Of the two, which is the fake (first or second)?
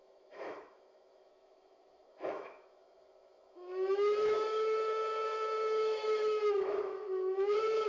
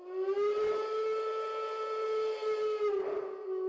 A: first